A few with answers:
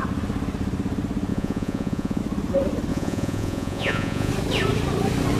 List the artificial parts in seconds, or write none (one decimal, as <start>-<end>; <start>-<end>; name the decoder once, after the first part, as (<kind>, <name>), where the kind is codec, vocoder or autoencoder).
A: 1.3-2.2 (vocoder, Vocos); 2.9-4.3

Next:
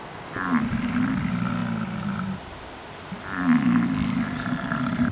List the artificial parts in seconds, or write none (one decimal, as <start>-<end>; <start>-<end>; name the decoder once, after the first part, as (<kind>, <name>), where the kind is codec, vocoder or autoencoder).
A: none

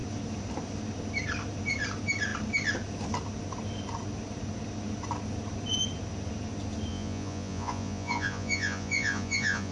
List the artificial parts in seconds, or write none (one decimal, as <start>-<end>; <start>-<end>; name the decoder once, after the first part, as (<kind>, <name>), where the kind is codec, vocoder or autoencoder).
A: 6.9-9.7 (vocoder, Vocos)